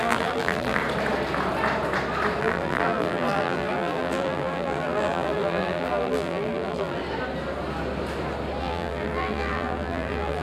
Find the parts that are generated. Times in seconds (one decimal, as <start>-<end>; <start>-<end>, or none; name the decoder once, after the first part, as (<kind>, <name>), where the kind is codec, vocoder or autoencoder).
0.0-0.8 (vocoder, BigVGAN v2); 2.4-7.0; 8.6-10.4